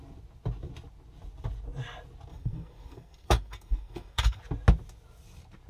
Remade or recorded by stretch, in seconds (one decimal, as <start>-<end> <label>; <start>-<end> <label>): 0.0-2.3 recorded; 2.3-4.4 remade; 4.4-5.7 recorded